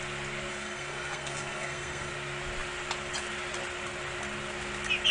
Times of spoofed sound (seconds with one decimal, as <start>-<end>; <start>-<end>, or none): 0.5-2.1